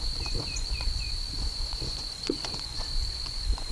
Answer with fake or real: fake